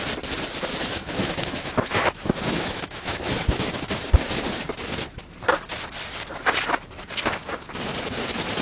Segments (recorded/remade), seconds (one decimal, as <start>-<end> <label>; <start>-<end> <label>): 0.0-0.7 recorded; 0.7-4.0 remade; 4.0-8.6 recorded